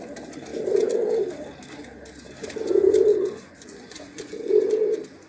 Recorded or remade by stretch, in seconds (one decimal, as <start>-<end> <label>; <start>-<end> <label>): 0.0-3.1 recorded; 3.1-4.5 remade; 4.5-5.3 recorded